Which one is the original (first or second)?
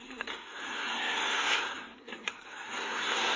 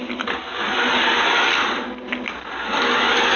second